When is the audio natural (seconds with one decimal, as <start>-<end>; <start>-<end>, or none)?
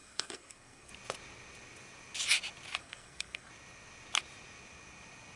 0.9-2.8; 3.5-5.4